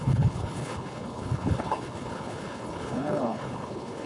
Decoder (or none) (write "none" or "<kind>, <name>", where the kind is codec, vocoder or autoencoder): codec, HILCodec